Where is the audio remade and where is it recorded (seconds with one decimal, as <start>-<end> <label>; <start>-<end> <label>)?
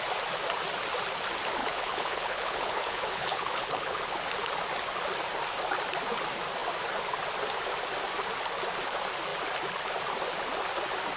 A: 0.0-1.6 recorded; 1.6-4.2 remade; 4.2-11.2 recorded